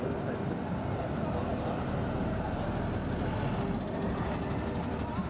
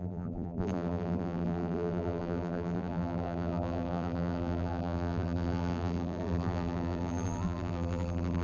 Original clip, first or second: first